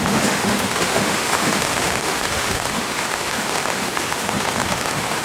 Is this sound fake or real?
fake